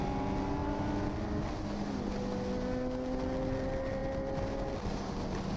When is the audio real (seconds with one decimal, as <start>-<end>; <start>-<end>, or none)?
0.0-5.6